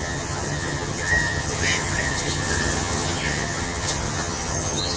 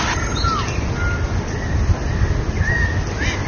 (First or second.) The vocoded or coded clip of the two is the first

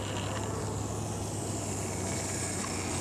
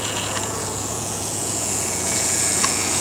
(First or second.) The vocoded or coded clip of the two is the second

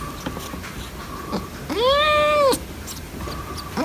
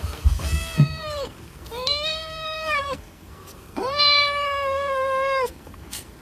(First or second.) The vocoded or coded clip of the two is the second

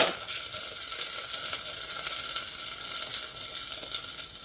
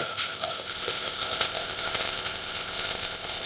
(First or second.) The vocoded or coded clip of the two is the second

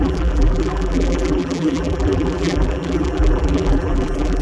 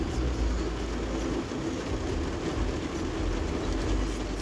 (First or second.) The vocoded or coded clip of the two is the first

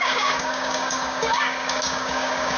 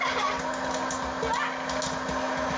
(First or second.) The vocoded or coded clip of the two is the first